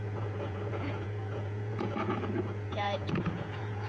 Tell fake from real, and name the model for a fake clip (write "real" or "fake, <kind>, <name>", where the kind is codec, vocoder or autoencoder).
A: fake, vocoder, Vocos